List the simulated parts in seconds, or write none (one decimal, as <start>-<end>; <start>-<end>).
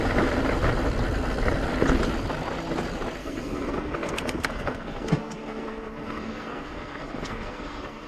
3.2-8.1